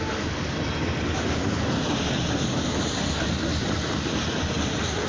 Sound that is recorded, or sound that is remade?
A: recorded